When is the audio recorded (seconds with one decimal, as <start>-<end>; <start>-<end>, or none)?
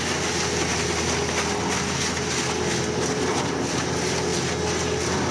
0.0-5.3